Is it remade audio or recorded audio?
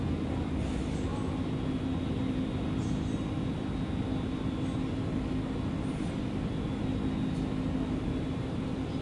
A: recorded